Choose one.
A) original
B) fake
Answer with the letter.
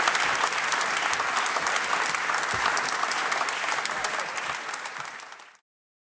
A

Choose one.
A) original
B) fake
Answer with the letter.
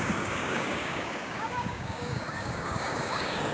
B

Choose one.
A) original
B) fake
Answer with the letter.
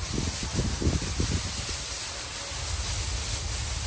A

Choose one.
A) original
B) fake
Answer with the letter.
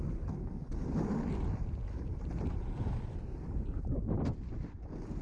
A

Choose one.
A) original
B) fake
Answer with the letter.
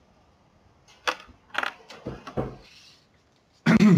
A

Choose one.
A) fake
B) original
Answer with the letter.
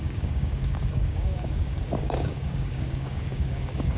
A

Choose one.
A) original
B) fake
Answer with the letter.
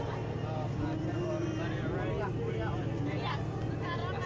A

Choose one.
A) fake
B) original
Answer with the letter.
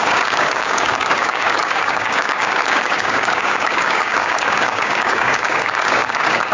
A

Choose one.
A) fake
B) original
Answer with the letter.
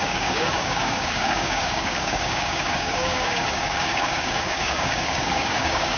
A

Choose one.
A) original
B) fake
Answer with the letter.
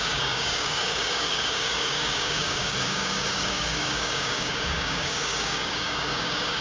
B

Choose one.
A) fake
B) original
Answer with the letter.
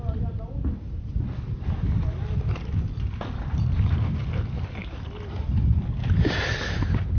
B